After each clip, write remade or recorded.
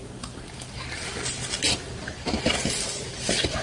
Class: recorded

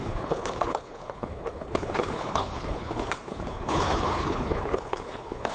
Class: remade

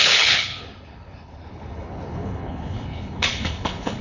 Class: remade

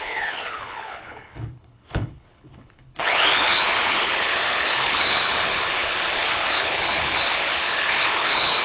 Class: remade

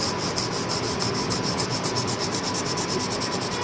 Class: recorded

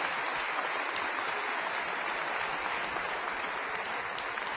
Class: recorded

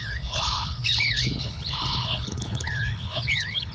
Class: remade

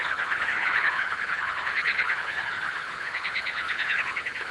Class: remade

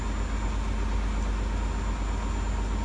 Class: recorded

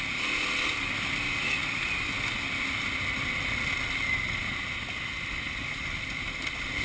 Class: recorded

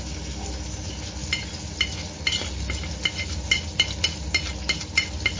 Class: recorded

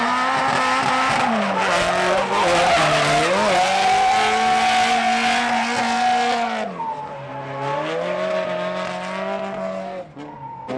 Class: recorded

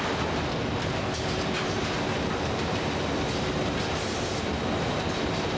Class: recorded